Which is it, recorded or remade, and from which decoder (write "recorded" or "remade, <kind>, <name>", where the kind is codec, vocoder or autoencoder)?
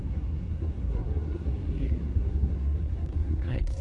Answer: remade, codec, SNAC